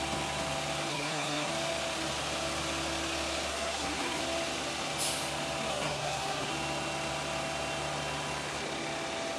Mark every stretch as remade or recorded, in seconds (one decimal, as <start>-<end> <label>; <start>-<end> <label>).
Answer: 0.0-0.9 recorded; 0.9-1.5 remade; 1.5-3.5 recorded; 3.5-4.2 remade; 4.2-5.7 recorded; 5.7-6.5 remade; 6.5-9.4 recorded